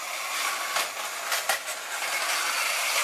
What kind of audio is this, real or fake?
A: real